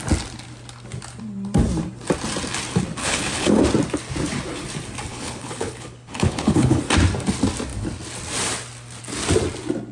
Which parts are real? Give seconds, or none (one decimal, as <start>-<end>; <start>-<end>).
0.0-3.0; 3.6-5.1; 6.8-9.9